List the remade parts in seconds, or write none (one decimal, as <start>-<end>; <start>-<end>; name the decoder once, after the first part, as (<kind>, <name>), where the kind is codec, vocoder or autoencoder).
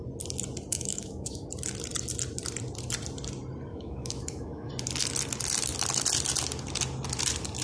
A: 0.7-1.4 (autoencoder, DAC-VAE); 3.7-4.7